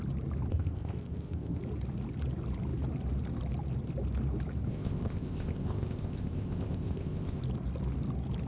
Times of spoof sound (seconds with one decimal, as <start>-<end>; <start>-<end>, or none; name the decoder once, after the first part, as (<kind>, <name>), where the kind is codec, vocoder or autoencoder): 0.5-1.6 (codec, ZipCodec); 4.7-7.4